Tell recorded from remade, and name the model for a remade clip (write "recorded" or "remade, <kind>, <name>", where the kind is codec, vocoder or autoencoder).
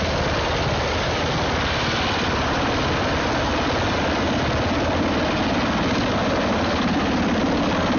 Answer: recorded